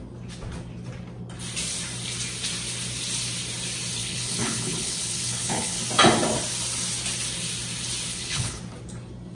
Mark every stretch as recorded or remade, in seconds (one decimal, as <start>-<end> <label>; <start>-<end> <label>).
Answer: 0.0-4.0 recorded; 4.0-5.8 remade; 5.8-8.1 recorded; 8.1-8.6 remade; 8.6-9.3 recorded

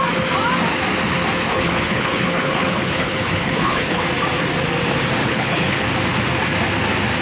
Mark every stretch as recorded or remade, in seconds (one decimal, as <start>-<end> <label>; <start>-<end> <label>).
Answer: 0.0-1.5 recorded; 1.5-4.0 remade; 4.0-5.2 recorded; 5.2-5.8 remade; 5.8-7.2 recorded

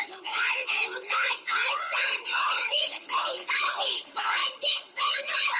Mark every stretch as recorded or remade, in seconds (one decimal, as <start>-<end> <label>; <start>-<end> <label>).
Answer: 0.0-5.6 remade

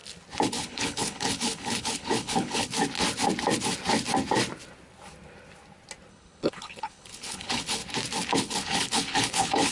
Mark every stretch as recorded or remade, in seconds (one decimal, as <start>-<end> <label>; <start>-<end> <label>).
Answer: 0.0-0.5 recorded; 0.5-2.7 remade; 2.7-6.1 recorded; 6.1-7.8 remade; 7.8-8.3 recorded; 8.3-9.7 remade